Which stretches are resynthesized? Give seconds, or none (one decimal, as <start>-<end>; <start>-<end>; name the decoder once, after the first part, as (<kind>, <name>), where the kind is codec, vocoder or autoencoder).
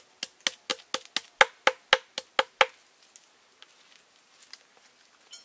none